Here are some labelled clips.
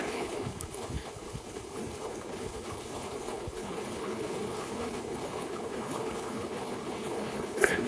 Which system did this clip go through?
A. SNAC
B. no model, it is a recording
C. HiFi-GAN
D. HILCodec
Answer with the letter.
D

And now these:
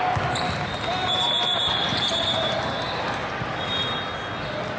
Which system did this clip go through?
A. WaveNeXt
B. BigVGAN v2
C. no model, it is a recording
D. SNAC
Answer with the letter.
C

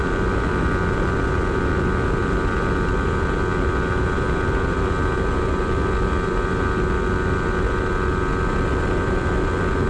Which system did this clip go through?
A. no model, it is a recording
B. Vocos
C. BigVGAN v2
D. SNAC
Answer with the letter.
A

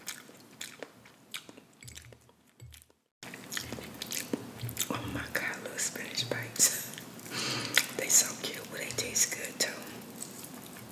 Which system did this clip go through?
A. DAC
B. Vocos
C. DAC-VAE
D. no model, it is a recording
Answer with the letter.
D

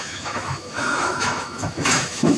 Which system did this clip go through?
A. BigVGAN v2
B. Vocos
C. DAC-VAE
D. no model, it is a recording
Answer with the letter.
C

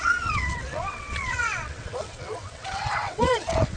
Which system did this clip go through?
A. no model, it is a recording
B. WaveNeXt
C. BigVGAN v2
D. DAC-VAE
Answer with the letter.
B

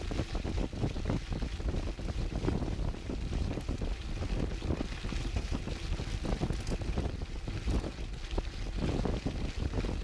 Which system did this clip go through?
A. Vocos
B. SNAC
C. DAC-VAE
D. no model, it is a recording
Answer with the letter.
D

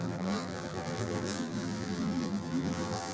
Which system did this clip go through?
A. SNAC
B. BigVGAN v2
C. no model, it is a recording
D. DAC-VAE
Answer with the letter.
B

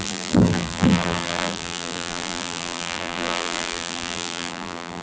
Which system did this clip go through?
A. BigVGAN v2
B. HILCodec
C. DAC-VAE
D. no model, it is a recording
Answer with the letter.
A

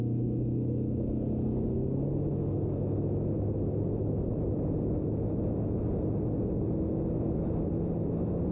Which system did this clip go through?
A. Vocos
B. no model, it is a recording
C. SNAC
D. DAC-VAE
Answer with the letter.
B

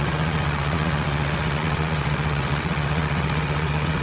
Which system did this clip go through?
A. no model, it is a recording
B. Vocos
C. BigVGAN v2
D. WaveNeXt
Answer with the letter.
D